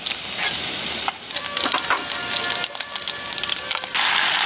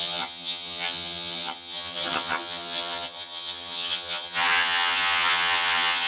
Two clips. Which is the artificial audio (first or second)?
second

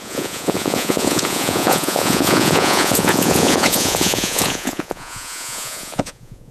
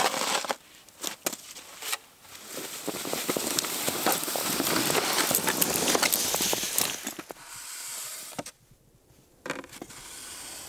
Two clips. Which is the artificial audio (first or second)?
first